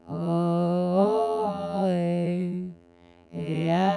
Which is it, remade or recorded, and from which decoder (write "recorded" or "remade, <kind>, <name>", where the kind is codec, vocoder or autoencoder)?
remade, vocoder, BigVGAN v2